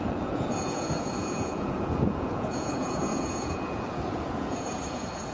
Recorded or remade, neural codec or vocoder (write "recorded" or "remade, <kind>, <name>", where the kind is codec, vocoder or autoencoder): remade, vocoder, Vocos